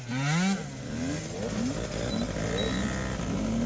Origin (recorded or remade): recorded